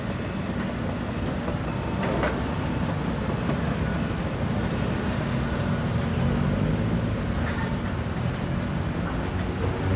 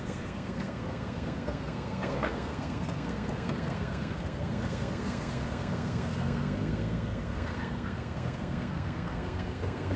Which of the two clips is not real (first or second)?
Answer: second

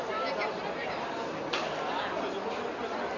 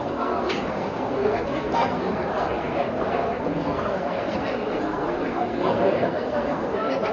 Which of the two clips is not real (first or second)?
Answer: second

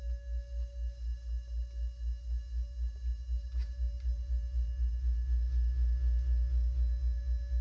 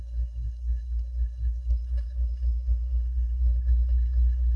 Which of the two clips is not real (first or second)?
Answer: second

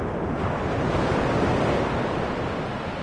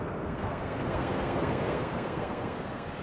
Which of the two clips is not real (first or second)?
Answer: second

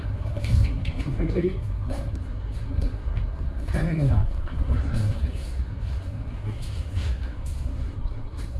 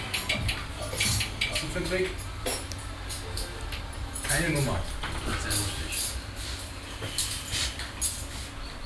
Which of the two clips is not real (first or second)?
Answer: first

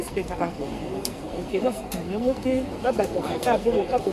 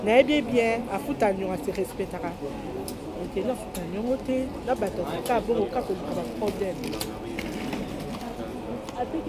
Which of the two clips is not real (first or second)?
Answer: first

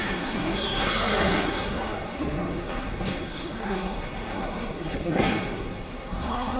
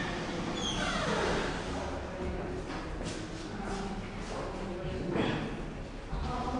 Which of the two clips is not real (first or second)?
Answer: first